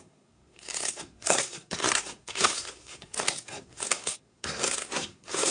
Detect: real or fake fake